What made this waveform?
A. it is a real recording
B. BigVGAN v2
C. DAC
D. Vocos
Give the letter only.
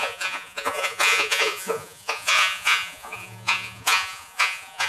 D